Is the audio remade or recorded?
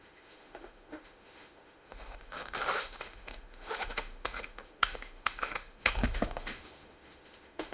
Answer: remade